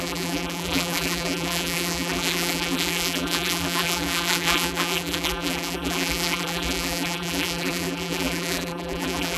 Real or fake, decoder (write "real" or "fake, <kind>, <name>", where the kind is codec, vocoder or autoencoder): fake, vocoder, BigVGAN v2